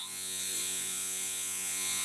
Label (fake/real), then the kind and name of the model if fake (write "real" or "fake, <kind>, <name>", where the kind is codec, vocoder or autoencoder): fake, vocoder, Vocos